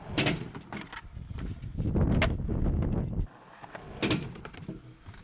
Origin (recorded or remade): recorded